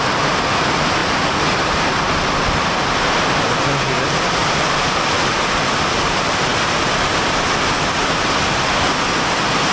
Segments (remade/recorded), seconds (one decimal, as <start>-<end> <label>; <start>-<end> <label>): 0.0-9.7 recorded

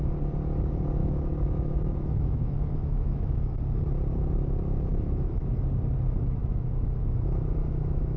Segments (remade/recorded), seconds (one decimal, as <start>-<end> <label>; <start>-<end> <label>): 0.0-1.0 recorded; 1.0-3.6 remade; 3.6-4.9 recorded; 4.9-5.5 remade; 5.5-6.4 recorded; 6.4-8.2 remade

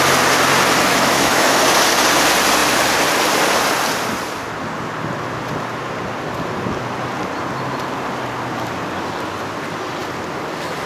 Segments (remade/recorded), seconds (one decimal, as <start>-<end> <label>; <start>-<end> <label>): 0.0-0.9 recorded; 0.9-1.6 remade; 1.6-10.9 recorded

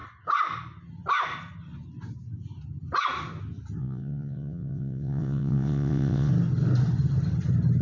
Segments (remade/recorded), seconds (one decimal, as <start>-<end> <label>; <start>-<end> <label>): 0.0-3.8 recorded; 3.8-6.3 remade; 6.3-7.8 recorded